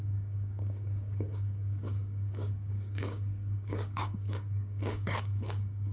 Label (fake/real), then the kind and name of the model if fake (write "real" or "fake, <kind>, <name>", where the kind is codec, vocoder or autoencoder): fake, codec, DAC